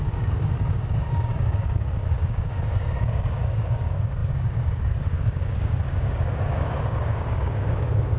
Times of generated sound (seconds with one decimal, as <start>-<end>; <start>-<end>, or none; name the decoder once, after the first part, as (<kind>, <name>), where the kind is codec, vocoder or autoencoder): 0.0-8.2 (codec, DAC)